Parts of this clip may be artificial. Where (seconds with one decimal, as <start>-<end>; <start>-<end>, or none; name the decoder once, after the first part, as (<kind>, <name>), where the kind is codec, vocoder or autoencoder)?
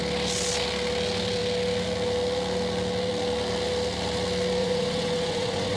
4.6-5.8 (vocoder, Vocos)